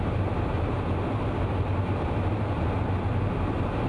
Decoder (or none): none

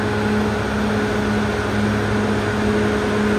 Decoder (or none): none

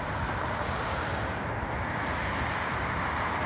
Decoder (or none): none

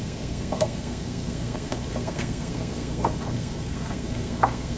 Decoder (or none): codec, SNAC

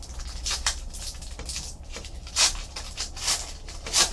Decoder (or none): none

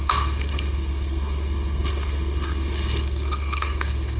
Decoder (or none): codec, SNAC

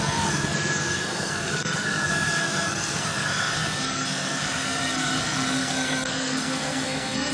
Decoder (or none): codec, SNAC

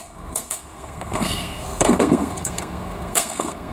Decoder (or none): codec, SNAC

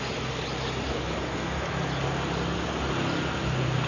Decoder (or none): none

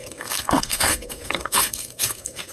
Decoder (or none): codec, SNAC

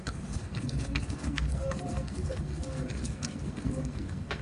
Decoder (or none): codec, SNAC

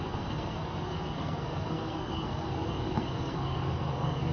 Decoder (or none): codec, SNAC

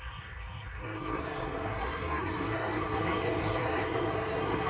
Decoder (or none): codec, SNAC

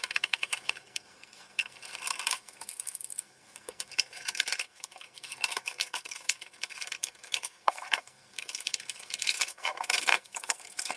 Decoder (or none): codec, SNAC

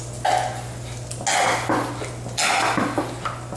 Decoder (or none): none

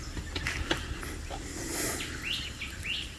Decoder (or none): none